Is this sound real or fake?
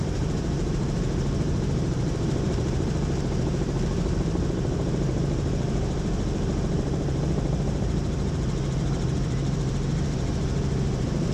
fake